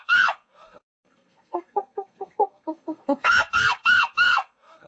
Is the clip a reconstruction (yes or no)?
yes